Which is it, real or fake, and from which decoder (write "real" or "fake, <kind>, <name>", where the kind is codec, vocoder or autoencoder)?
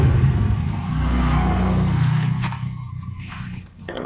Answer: fake, codec, SNAC